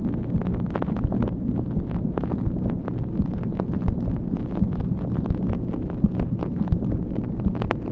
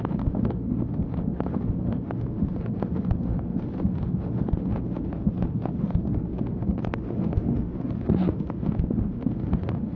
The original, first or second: first